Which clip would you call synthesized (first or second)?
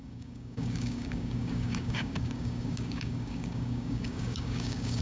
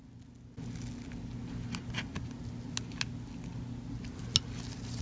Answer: first